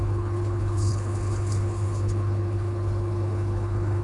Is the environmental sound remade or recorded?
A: remade